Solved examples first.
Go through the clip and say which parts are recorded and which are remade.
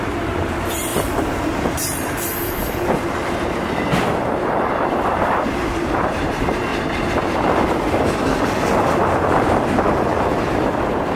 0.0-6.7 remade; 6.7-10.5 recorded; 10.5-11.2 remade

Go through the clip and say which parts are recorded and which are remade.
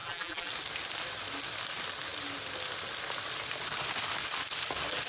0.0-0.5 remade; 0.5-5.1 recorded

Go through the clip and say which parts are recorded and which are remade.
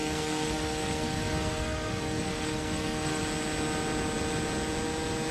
0.0-3.2 remade; 3.2-5.3 recorded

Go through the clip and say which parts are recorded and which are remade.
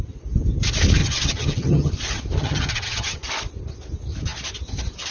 0.0-1.0 recorded; 1.0-1.9 remade; 1.9-2.4 recorded; 2.4-3.2 remade; 3.2-5.1 recorded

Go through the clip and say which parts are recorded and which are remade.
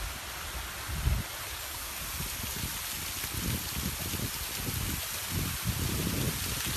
0.0-1.5 recorded; 1.5-2.0 remade; 2.0-6.8 recorded